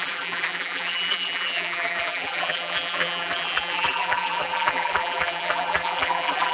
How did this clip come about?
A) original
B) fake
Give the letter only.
B